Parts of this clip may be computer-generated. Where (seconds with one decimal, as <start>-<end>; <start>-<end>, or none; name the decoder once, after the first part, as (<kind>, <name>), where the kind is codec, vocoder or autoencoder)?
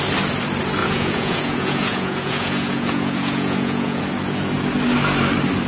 0.8-4.0 (vocoder, Vocos)